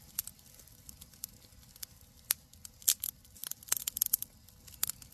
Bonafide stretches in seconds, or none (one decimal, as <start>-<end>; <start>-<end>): 0.0-5.1